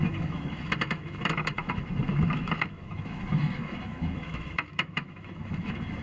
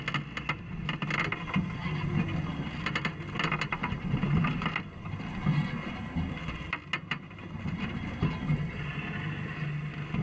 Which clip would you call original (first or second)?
second